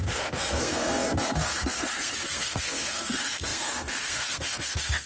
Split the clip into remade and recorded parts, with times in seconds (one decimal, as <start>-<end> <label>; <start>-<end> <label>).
0.0-5.1 remade